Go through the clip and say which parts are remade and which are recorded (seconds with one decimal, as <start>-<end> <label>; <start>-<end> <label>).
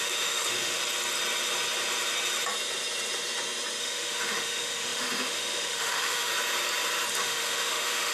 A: 0.0-0.8 remade; 0.8-3.8 recorded; 3.8-6.3 remade; 6.3-7.1 recorded; 7.1-8.1 remade